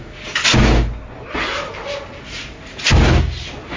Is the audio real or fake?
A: real